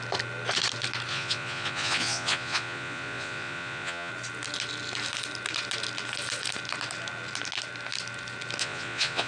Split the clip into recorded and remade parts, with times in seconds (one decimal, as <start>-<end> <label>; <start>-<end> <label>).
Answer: 0.0-1.1 recorded; 1.1-4.1 remade; 4.1-8.6 recorded; 8.6-9.3 remade